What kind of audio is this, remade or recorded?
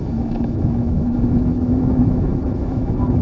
remade